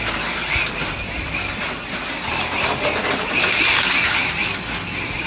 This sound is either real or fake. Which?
real